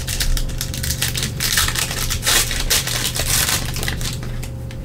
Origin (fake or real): fake